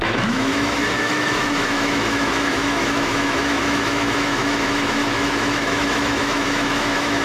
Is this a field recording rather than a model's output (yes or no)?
no